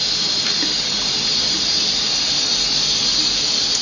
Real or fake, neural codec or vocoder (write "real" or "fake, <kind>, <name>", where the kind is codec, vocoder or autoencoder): real